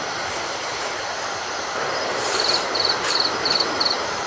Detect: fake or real fake